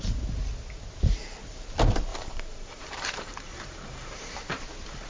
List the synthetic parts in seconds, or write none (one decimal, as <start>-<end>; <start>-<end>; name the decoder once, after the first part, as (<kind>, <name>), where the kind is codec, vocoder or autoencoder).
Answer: 2.1-4.6 (vocoder, BigVGAN v2)